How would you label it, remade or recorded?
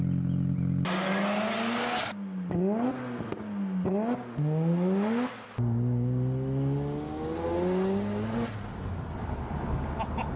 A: recorded